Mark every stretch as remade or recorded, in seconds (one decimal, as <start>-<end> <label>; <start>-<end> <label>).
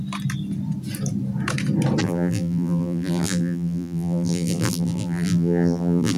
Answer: 0.0-2.0 recorded; 2.0-6.2 remade